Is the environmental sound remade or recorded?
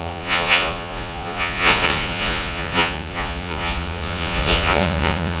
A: remade